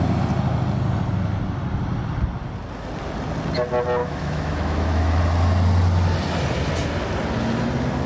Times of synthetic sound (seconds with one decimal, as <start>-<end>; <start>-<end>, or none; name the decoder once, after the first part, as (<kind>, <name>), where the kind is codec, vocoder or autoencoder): 4.0-5.2 (autoencoder, DAC-VAE)